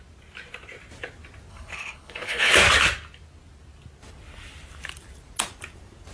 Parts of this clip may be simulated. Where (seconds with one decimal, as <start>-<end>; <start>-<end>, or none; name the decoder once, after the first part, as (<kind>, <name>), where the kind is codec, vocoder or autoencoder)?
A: 1.5-2.5 (codec, HILCodec)

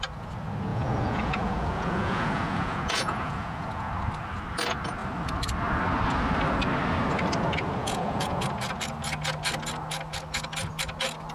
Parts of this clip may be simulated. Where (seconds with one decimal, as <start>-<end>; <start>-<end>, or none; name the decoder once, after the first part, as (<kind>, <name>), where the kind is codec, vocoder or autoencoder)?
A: 0.7-3.9 (vocoder, Vocos); 7.8-8.4